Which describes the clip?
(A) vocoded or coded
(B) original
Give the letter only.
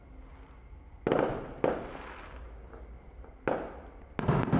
B